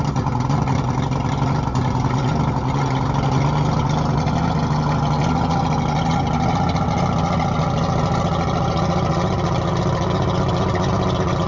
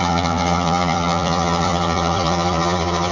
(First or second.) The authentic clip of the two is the first